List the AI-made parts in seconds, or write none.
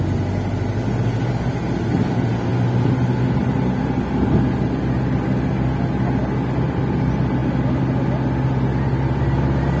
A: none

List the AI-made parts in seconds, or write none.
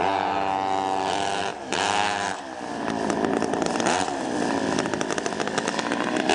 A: none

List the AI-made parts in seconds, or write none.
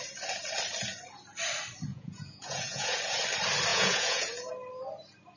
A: 1.9-3.0 (vocoder, Vocos); 3.7-4.5